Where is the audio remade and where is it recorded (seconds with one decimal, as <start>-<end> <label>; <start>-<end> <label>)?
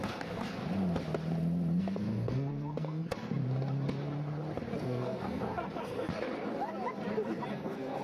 0.0-0.6 remade; 0.6-1.8 recorded; 1.8-3.1 remade; 3.1-4.8 recorded; 4.8-6.1 remade; 6.1-7.5 recorded; 7.5-8.0 remade